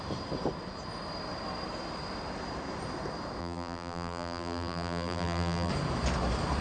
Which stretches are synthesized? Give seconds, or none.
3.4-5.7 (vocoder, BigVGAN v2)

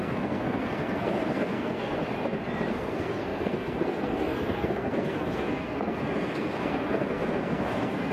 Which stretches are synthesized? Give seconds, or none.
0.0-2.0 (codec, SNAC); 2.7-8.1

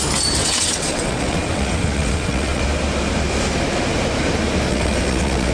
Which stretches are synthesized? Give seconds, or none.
0.4-2.6 (vocoder, WaveNeXt); 4.7-5.5

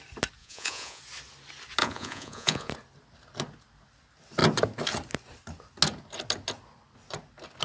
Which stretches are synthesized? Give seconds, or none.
0.4-1.0 (vocoder, Vocos); 1.8-2.7

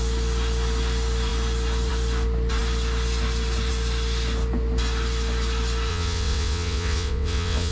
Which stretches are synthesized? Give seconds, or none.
5.9-7.7 (vocoder, WaveNeXt)

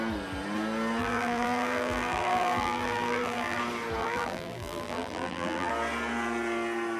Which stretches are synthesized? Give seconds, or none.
1.0-3.6 (vocoder, BigVGAN v2); 4.0-5.7